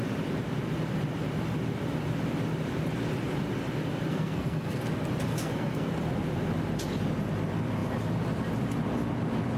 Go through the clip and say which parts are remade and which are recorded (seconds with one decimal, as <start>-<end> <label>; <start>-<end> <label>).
0.0-4.1 recorded; 4.1-4.8 remade; 4.8-5.3 recorded; 5.3-5.9 remade; 5.9-9.6 recorded